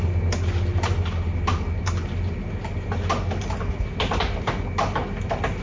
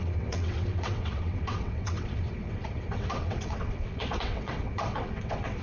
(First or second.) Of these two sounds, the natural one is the first